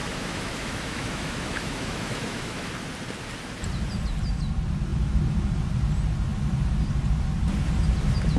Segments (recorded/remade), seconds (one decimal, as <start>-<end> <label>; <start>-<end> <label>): 0.0-2.7 remade; 2.7-8.4 recorded